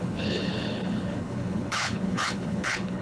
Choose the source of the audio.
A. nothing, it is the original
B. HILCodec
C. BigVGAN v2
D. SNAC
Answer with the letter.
B